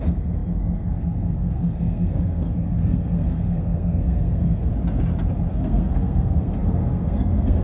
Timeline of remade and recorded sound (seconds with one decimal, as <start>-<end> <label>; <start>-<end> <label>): 0.0-4.7 remade; 4.7-5.5 recorded; 5.5-7.6 remade